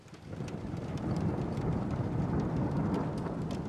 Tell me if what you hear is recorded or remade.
recorded